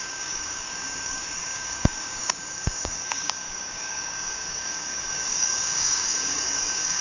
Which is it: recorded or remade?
remade